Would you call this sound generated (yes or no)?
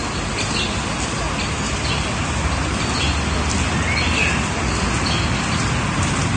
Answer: no